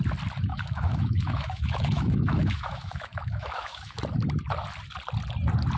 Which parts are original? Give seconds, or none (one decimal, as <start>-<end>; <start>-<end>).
0.0-0.5; 4.0-5.8